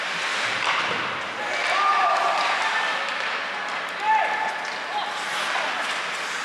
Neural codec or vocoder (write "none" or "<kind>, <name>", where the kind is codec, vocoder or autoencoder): none